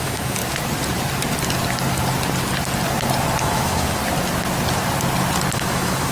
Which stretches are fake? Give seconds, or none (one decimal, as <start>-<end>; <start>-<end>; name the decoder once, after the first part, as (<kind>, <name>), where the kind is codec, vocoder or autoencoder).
0.0-0.4 (autoencoder, DAC-VAE); 3.4-4.0; 5.5-6.1